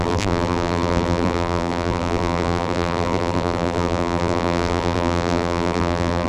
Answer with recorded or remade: remade